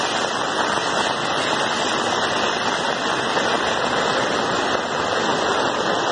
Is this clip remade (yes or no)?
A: no